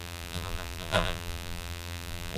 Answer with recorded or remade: remade